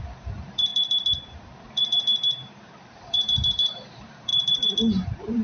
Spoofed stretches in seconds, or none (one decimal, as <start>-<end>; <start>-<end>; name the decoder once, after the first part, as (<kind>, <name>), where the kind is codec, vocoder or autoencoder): 0.0-0.7 (vocoder, BigVGAN v2); 1.6-5.4